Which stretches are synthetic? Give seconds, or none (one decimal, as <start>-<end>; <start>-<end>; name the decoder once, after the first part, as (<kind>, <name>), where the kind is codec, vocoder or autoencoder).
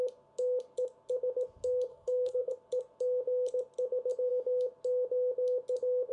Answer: 1.9-2.5 (codec, SNAC)